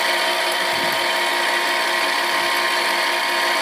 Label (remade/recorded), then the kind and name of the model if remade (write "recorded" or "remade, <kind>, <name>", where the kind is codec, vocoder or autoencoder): recorded